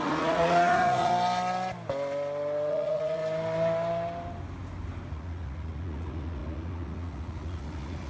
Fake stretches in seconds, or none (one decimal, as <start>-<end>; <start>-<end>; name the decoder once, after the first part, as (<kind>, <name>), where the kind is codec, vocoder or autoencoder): 0.0-1.1 (vocoder, Vocos); 2.7-3.2; 5.1-8.1